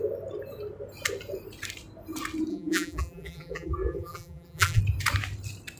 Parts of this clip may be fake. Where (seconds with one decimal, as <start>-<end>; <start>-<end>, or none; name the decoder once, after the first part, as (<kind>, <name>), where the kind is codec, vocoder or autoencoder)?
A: 2.5-4.8 (vocoder, BigVGAN v2)